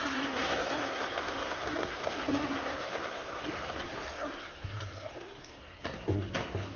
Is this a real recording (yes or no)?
no